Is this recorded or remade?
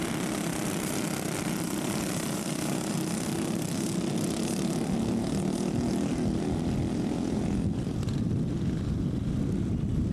recorded